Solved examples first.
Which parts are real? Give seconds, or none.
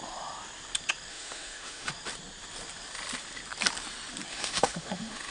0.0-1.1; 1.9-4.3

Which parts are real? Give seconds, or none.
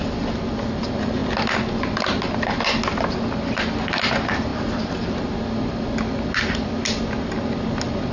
0.0-8.1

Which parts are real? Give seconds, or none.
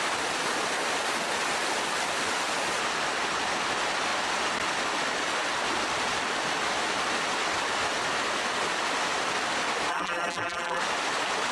0.0-9.9; 10.8-11.5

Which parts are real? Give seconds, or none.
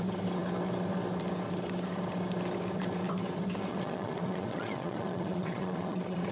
0.0-3.7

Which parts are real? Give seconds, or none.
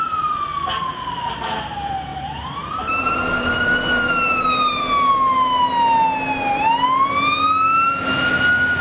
0.0-2.1; 3.2-8.8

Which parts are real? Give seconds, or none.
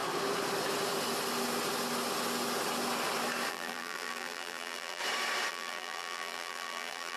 0.0-3.5; 5.0-5.5